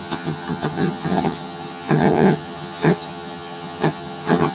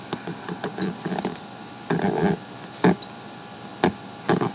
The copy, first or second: first